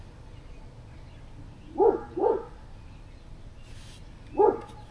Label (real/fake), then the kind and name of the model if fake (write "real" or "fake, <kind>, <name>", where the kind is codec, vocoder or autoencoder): real